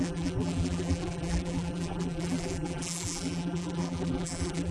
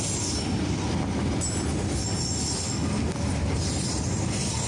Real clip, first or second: second